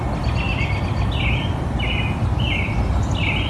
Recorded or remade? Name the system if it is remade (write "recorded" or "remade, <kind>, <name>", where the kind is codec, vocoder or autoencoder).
recorded